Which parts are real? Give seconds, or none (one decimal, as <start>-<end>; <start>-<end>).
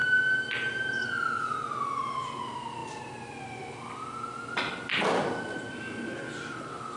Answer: 0.0-7.0